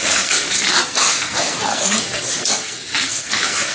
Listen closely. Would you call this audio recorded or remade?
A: remade